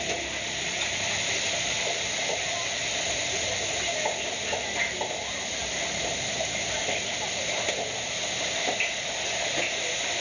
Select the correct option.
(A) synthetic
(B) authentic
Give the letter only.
B